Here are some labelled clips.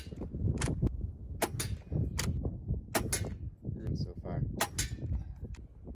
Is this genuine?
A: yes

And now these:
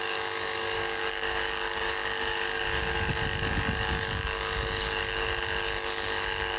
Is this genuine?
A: no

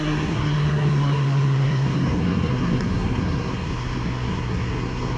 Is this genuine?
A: no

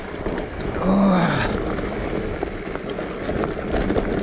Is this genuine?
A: yes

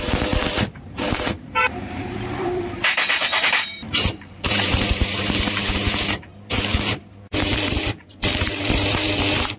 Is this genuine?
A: no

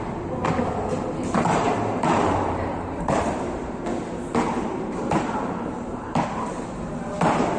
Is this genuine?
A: no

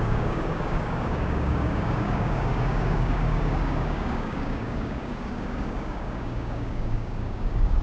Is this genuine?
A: no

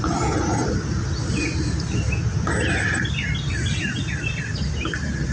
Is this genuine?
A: yes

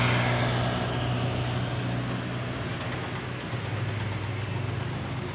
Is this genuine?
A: yes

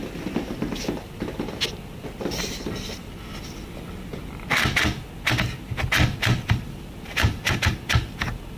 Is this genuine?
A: yes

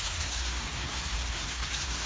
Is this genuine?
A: no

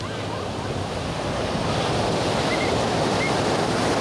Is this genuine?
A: yes